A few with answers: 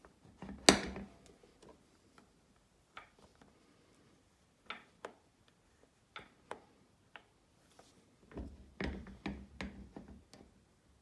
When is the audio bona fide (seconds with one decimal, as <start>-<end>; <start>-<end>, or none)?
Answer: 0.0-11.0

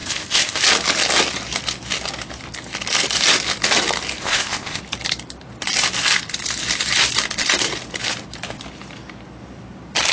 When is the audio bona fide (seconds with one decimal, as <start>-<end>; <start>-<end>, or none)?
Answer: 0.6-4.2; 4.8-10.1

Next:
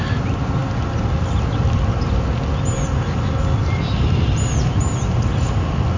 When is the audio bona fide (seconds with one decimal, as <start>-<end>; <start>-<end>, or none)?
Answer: 0.0-6.0